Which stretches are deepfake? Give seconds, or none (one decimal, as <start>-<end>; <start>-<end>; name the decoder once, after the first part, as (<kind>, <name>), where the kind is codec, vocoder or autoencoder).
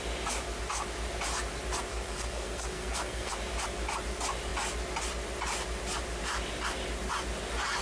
1.9-3.3 (codec, SNAC)